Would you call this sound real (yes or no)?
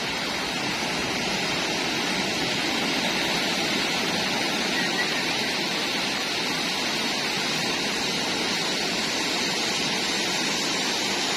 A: no